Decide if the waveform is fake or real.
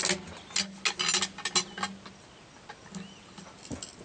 real